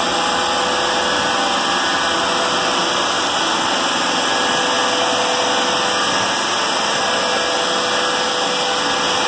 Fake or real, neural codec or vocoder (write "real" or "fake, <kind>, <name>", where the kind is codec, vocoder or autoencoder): real